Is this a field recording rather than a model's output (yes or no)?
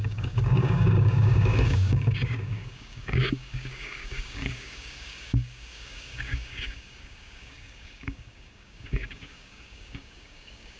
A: no